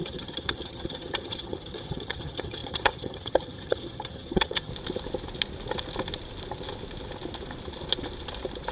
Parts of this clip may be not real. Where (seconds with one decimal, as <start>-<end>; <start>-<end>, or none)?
0.0-4.7